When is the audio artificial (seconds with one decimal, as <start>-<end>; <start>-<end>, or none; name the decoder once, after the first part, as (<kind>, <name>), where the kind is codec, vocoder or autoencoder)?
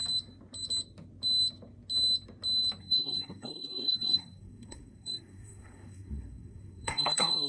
2.8-7.5 (codec, SNAC)